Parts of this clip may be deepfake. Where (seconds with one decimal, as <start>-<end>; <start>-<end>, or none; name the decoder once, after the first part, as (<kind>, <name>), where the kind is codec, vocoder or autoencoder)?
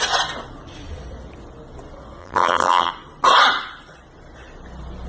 2.2-2.9 (vocoder, BigVGAN v2)